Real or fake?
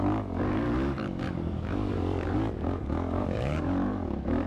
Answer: fake